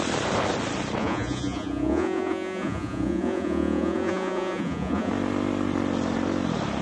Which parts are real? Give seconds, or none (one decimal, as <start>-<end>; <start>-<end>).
0.0-1.0; 5.1-6.8